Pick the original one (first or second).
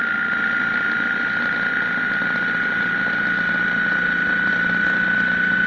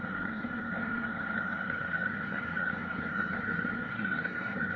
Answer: first